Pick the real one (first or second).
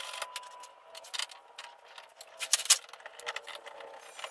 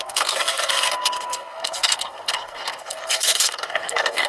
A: first